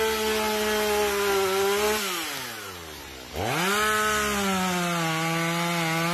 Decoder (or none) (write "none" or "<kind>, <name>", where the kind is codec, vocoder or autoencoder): none